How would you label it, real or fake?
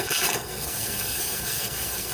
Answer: fake